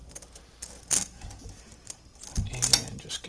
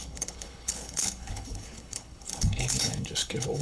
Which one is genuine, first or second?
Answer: first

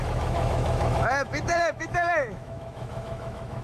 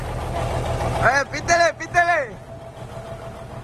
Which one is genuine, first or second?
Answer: second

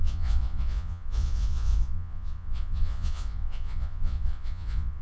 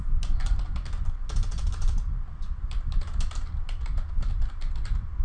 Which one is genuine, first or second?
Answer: second